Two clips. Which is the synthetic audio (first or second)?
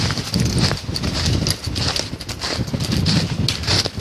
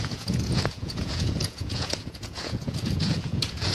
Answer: second